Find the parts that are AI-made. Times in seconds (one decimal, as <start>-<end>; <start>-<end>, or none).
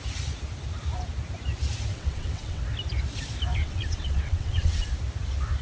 1.9-2.6; 3.6-4.9